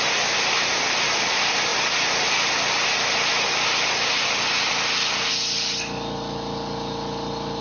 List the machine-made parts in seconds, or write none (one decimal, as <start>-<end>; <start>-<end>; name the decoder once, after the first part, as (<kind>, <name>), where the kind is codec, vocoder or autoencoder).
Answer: none